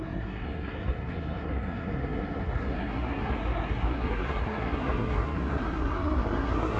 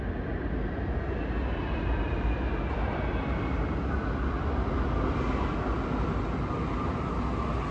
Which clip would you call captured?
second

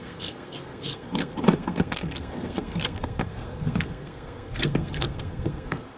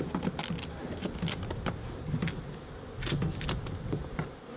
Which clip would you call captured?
second